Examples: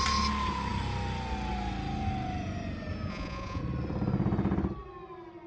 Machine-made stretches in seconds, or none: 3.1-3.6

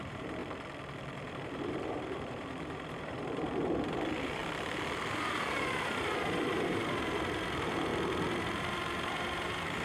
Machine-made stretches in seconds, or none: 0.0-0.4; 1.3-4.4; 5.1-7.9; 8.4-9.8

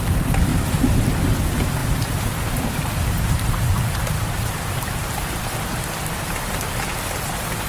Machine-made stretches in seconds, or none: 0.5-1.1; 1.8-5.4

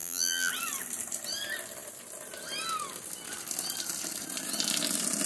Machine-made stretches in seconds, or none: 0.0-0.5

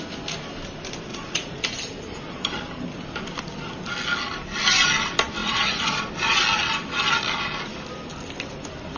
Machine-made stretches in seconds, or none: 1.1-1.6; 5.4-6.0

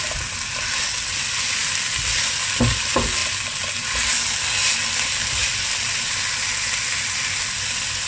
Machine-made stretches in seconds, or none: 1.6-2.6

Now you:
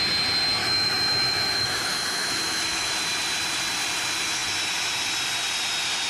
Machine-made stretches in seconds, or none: 0.6-2.9

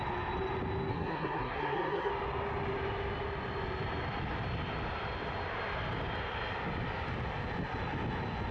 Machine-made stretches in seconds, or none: 0.9-2.1